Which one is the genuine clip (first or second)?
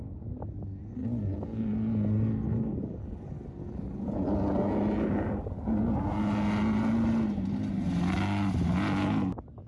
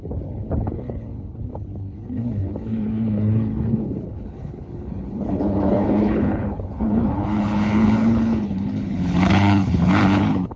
first